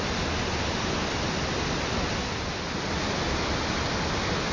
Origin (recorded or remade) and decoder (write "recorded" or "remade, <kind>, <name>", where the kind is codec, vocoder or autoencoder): recorded